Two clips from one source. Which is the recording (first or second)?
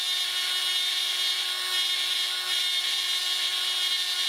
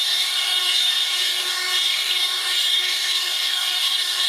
first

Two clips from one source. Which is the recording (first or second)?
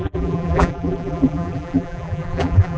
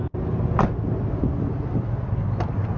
second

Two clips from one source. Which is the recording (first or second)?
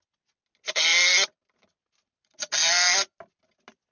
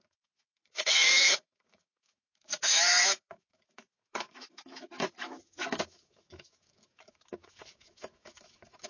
first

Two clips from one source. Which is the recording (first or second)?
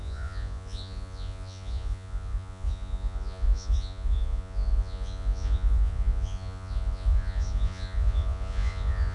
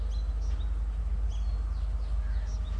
second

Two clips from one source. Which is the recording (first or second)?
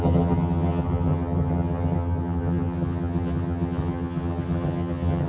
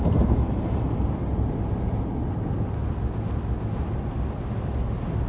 second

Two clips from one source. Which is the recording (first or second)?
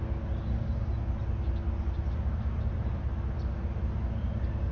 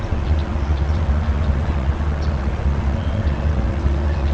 first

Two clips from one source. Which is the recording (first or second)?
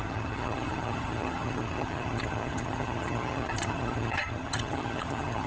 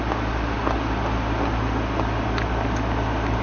second